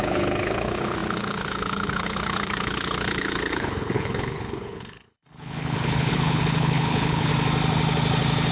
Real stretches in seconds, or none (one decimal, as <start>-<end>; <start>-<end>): 7.3-8.5